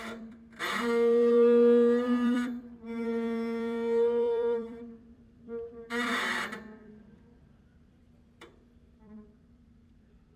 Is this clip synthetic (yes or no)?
yes